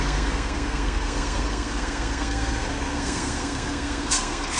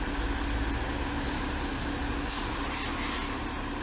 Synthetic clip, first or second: first